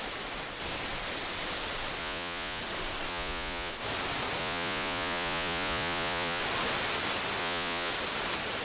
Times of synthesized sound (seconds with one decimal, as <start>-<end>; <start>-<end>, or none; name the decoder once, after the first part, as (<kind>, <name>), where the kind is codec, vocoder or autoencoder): 2.0-2.6 (vocoder, Vocos); 3.1-3.7; 4.4-6.4; 7.4-7.9